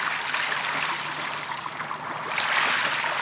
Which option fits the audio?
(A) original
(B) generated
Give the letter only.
A